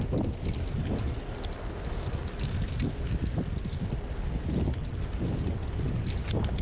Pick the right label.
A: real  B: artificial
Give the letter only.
A